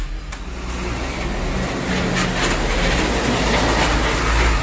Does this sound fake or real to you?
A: real